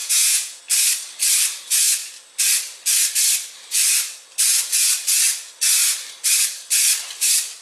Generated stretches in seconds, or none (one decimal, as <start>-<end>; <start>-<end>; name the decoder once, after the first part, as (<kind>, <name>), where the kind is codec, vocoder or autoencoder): 0.0-0.6 (vocoder, Vocos)